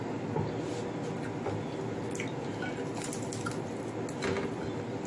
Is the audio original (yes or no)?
yes